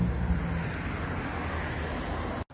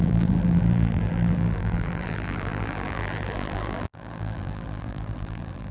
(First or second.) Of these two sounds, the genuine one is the first